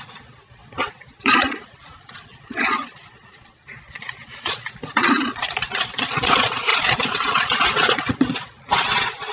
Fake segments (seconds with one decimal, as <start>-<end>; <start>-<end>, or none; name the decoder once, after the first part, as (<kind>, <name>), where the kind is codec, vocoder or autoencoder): 0.0-9.3 (vocoder, Vocos)